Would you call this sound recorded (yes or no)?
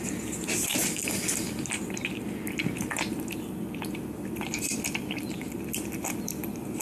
yes